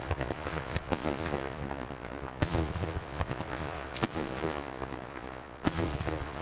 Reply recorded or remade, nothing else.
remade